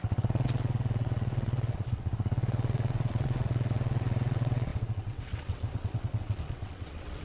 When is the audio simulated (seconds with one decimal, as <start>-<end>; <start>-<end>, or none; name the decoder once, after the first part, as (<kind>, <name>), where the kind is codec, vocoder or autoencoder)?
0.0-7.2 (vocoder, WaveNeXt)